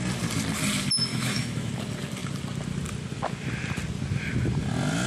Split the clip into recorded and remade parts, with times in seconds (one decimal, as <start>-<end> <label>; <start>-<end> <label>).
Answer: 0.0-1.1 recorded; 1.1-1.7 remade; 1.7-5.1 recorded